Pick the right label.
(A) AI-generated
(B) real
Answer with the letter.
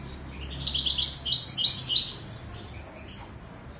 B